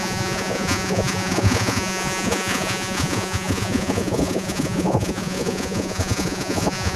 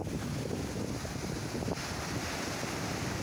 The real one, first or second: second